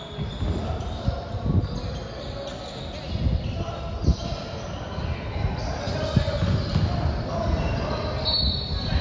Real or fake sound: real